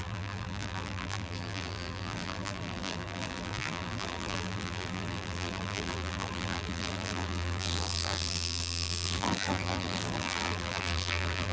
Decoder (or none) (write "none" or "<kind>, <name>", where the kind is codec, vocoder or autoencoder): vocoder, BigVGAN v2